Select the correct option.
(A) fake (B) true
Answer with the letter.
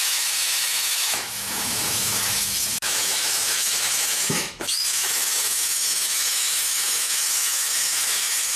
A